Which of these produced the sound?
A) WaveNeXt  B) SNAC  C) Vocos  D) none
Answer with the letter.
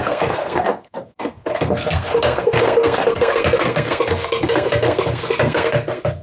B